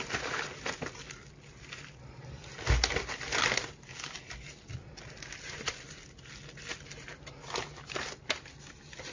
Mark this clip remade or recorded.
recorded